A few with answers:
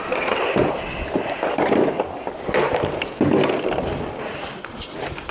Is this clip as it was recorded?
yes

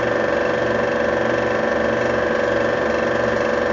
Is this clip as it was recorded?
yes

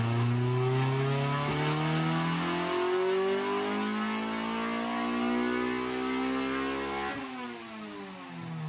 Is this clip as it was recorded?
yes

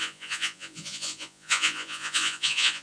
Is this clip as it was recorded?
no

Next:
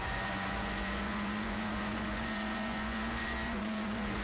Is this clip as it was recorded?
no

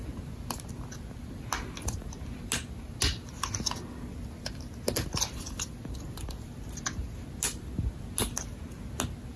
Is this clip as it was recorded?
yes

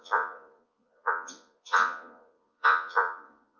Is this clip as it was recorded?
no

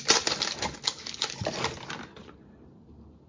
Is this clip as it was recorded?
yes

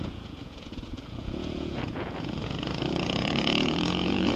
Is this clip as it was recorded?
no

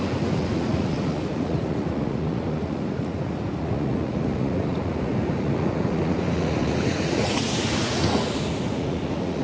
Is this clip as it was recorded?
no